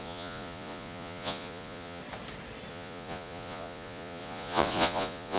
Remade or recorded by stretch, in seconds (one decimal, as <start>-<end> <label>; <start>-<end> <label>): 0.0-2.0 remade; 2.0-2.7 recorded; 2.7-5.4 remade